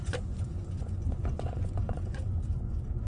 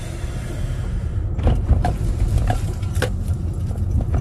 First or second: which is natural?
second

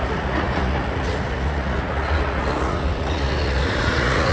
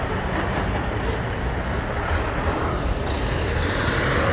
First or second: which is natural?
second